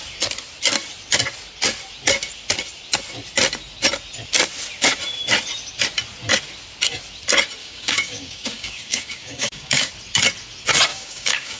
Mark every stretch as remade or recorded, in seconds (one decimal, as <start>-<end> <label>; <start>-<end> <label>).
0.0-7.6 recorded; 7.6-9.9 remade; 9.9-10.9 recorded; 10.9-11.6 remade